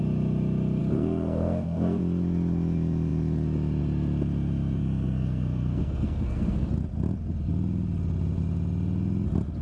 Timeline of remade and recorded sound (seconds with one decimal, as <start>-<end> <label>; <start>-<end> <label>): 0.0-0.8 recorded; 0.8-2.0 remade; 2.0-4.8 recorded; 4.8-6.7 remade; 6.7-9.6 recorded